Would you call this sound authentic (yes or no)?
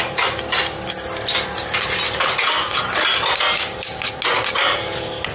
yes